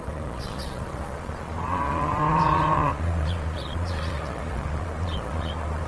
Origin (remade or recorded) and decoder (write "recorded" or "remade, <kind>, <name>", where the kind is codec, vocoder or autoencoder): remade, vocoder, Vocos